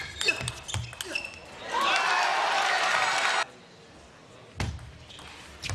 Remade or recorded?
recorded